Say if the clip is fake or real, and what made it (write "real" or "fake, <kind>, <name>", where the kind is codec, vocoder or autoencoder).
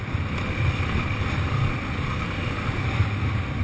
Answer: real